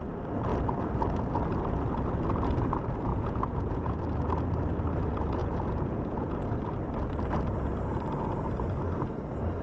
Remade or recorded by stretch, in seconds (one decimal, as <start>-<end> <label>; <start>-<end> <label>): 0.0-3.1 recorded; 3.1-4.0 remade; 4.0-5.4 recorded; 5.4-6.5 remade; 6.5-9.6 recorded